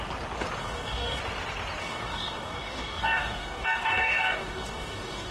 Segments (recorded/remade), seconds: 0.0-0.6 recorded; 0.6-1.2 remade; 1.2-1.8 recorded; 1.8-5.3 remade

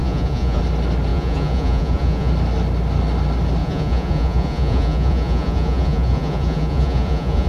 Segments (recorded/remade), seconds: 0.0-0.6 remade; 0.6-1.1 recorded; 1.1-2.3 remade; 2.3-3.6 recorded; 3.6-7.5 remade

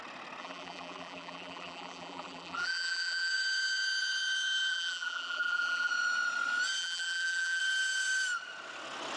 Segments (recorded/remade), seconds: 0.0-0.4 recorded; 0.4-3.3 remade; 3.3-4.7 recorded; 4.7-5.9 remade; 5.9-6.8 recorded; 6.8-7.6 remade; 7.6-9.2 recorded

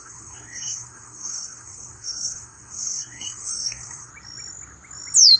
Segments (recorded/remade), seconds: 0.0-4.1 remade; 4.1-5.4 recorded

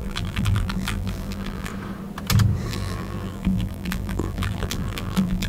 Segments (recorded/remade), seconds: 0.0-1.7 remade; 1.7-2.7 recorded; 2.7-5.5 remade

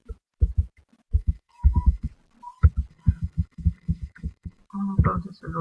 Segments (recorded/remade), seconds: 0.0-1.2 recorded; 1.2-2.1 remade; 2.1-2.9 recorded; 2.9-4.6 remade; 4.6-5.6 recorded

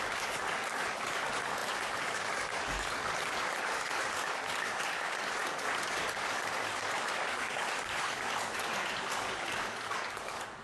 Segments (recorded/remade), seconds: 0.0-10.6 remade